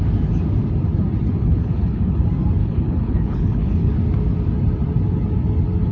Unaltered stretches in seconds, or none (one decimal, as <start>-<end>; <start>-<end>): 0.0-1.4; 2.2-2.6; 3.9-5.9